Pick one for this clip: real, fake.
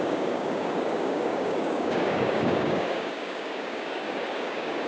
fake